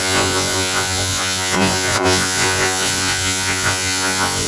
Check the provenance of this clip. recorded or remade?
remade